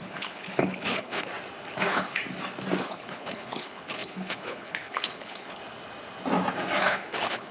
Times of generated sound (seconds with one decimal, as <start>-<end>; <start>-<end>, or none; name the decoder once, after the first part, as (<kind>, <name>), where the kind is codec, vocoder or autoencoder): 0.0-1.3 (codec, HILCodec); 1.8-2.2; 2.8-5.6; 6.8-7.5